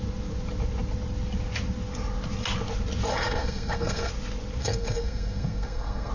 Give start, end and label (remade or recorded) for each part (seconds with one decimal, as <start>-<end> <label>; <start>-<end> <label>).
0.0-3.1 recorded; 3.1-4.1 remade; 4.1-4.6 recorded; 4.6-6.1 remade